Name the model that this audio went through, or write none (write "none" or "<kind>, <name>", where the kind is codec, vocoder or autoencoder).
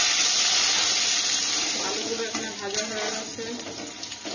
none